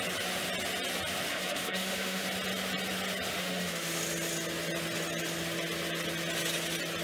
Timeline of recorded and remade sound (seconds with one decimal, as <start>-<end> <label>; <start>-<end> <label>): 0.0-1.3 recorded; 1.3-2.2 remade; 2.2-3.4 recorded; 3.4-4.0 remade; 4.0-7.0 recorded